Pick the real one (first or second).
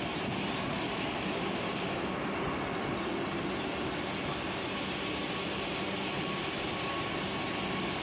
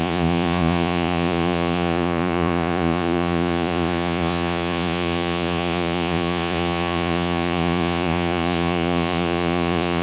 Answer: first